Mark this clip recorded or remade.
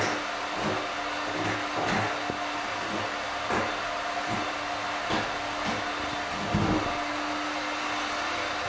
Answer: recorded